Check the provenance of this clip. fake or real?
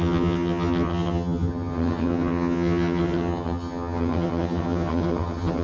fake